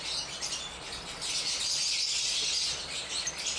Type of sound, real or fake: real